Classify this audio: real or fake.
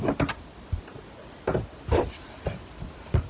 real